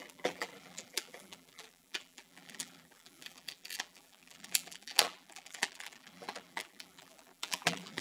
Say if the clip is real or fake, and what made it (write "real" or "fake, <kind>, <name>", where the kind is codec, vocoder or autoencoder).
fake, vocoder, BigVGAN v2